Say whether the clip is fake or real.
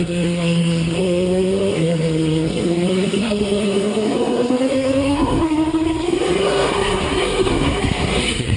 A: fake